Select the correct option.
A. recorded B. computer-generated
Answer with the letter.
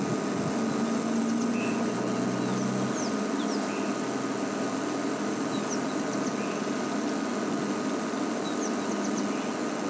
A